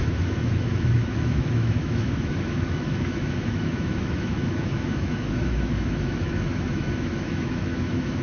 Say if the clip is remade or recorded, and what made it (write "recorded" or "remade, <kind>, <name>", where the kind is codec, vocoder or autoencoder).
remade, autoencoder, DAC-VAE